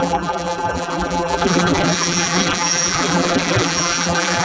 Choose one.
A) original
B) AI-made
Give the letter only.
B